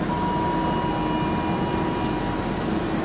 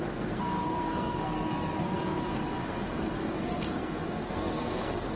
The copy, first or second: second